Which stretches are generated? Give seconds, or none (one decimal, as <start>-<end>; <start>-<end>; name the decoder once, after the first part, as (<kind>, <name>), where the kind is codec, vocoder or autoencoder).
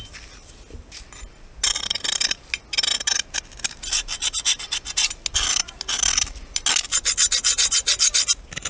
none